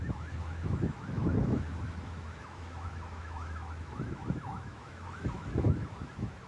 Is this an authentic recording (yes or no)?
no